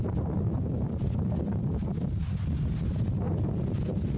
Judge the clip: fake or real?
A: real